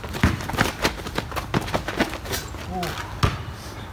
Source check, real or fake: real